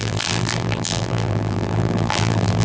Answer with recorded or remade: remade